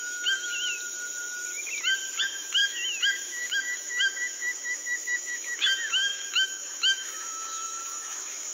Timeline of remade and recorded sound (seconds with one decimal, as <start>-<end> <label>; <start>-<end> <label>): 0.0-0.5 remade; 0.5-2.2 recorded; 2.2-8.5 remade